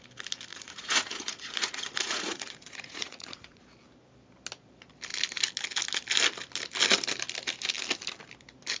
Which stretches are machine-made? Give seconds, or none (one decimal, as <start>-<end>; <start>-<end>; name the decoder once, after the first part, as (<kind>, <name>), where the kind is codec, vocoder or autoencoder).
0.5-3.6 (vocoder, Vocos)